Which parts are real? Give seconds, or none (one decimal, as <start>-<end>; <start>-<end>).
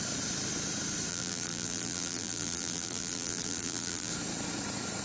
0.0-1.1; 4.1-5.0